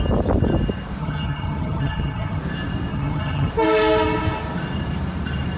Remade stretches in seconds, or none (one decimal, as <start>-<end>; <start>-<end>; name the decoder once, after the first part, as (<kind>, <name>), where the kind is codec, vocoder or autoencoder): 1.0-2.4 (vocoder, HiFi-GAN); 2.9-3.5